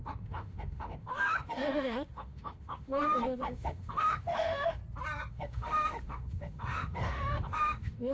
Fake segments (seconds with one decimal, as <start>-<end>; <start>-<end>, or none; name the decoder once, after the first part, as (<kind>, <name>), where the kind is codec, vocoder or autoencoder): 0.0-4.8 (autoencoder, DAC-VAE); 5.3-8.1